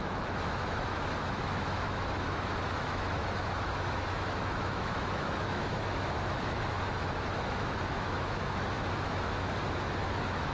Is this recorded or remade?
remade